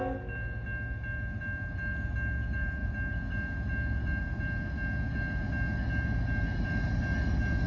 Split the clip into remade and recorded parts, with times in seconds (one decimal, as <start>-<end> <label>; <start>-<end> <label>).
0.0-7.7 recorded

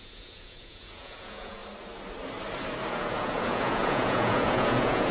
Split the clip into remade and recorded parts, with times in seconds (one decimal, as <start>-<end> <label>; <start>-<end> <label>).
0.0-1.6 remade; 1.6-2.9 recorded; 2.9-5.1 remade